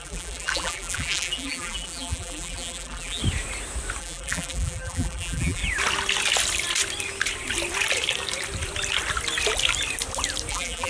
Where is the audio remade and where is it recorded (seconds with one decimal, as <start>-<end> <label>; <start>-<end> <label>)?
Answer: 0.0-3.2 remade; 3.2-4.0 recorded; 4.0-5.6 remade; 5.6-10.5 recorded; 10.5-10.9 remade